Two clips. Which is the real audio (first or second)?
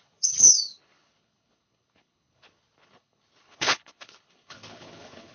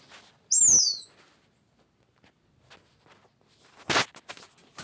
second